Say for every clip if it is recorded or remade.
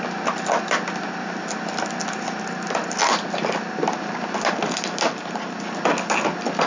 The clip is recorded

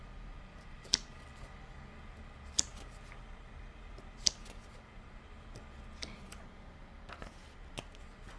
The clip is recorded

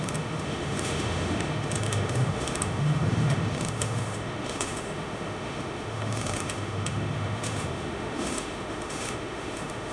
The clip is remade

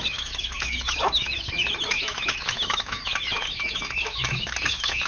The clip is remade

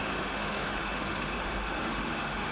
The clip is remade